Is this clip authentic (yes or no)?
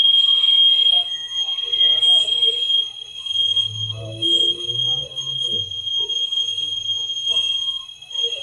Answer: no